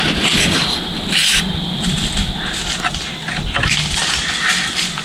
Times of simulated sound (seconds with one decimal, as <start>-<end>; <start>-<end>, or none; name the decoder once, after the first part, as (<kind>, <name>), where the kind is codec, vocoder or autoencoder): none